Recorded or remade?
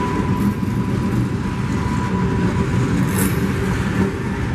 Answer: recorded